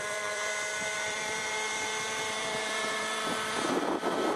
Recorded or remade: remade